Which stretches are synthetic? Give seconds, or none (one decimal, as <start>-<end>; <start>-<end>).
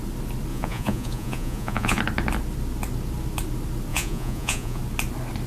0.5-2.0; 3.9-4.8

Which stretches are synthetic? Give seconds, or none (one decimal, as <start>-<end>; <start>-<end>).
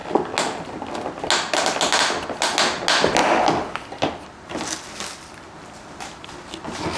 none